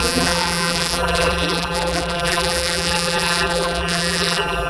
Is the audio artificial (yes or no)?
yes